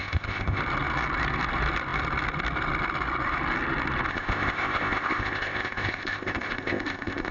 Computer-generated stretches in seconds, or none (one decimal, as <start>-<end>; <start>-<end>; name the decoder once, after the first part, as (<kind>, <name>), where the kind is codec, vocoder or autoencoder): 0.0-0.6 (codec, ZipCodec); 4.1-7.3